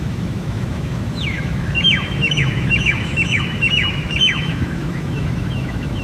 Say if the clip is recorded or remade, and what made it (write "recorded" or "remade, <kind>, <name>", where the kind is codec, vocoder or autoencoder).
remade, autoencoder, DAC-VAE